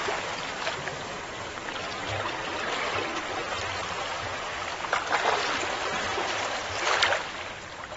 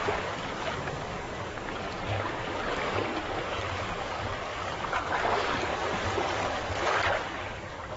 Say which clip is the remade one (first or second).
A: second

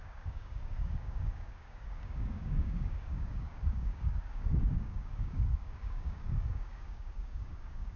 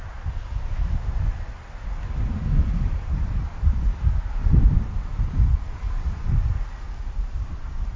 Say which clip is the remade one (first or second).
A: first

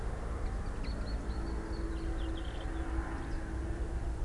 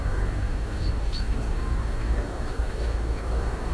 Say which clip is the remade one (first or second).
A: second